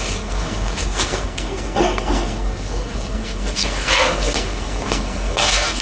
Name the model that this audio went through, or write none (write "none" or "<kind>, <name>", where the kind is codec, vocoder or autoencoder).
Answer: codec, SNAC